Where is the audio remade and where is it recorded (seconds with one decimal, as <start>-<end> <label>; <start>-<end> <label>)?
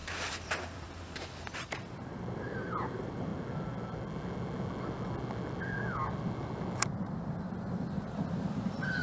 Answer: 0.0-3.3 remade; 3.3-7.1 recorded; 7.1-9.0 remade